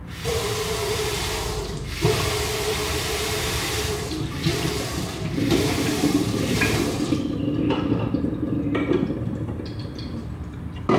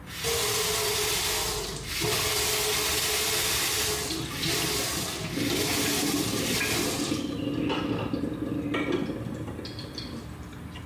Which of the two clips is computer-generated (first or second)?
first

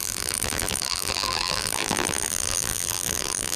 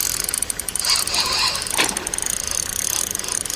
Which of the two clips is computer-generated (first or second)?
first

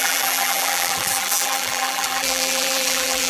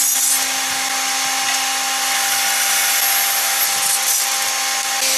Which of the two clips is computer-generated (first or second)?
first